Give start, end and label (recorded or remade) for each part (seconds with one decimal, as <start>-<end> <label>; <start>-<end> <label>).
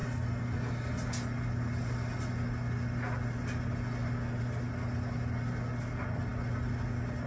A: 0.0-7.3 recorded